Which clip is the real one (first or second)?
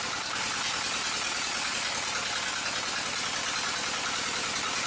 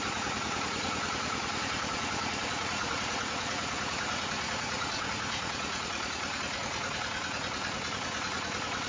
first